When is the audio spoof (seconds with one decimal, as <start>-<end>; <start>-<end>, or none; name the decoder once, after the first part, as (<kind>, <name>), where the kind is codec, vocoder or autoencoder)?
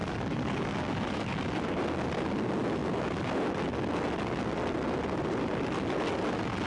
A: 0.0-1.3 (codec, DAC)